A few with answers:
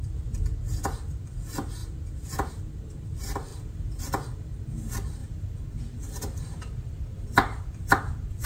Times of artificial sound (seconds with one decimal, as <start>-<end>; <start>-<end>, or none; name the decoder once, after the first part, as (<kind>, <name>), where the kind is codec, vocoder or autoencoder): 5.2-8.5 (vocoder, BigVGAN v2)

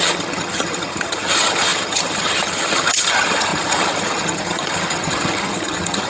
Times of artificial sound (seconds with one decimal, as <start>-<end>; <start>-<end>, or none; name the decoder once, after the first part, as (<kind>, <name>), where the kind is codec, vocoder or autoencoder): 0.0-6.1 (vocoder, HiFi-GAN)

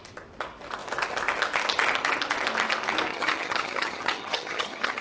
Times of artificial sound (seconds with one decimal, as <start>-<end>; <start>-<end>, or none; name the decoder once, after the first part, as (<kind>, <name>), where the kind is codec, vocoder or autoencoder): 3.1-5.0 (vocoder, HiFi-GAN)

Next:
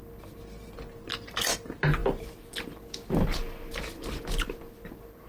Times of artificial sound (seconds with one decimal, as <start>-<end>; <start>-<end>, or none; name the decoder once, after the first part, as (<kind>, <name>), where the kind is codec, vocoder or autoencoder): none

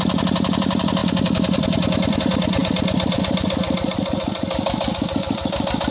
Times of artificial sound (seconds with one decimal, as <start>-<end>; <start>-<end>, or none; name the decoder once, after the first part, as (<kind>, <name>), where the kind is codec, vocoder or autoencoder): 0.0-5.9 (vocoder, BigVGAN v2)

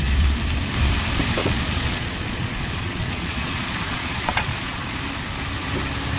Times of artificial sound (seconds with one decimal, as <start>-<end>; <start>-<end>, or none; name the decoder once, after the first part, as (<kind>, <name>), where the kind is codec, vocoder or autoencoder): 1.4-5.0 (vocoder, Vocos)

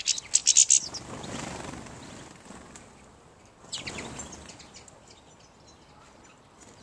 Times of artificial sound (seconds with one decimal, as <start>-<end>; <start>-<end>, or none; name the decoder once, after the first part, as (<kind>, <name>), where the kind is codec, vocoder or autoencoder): none

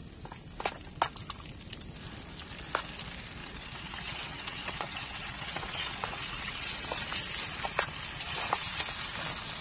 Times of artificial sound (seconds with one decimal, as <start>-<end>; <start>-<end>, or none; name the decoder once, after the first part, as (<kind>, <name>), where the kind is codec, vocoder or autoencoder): 3.4-6.8 (vocoder, WaveNeXt)